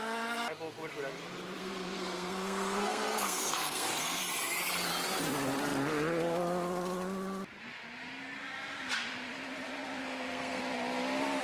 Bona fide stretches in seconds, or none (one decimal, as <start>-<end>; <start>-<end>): 0.0-1.6; 4.2-10.0; 10.6-11.4